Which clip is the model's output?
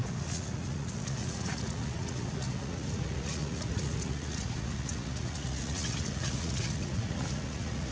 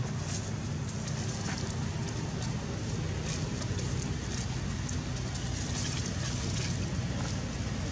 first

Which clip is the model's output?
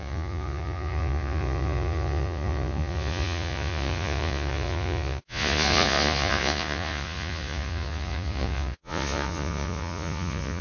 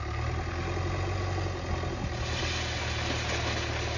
first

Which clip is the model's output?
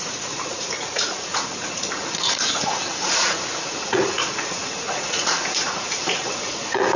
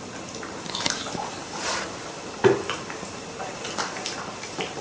first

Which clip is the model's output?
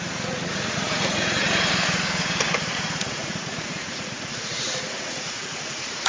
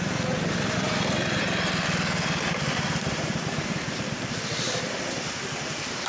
first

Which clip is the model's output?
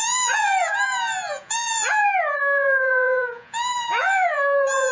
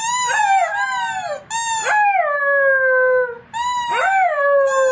first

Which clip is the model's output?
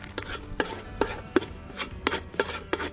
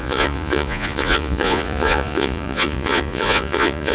second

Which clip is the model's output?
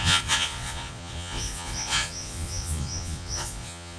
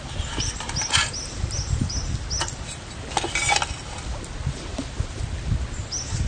first